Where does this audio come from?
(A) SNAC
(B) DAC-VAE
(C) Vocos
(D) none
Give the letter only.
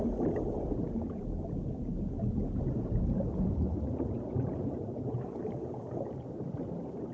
D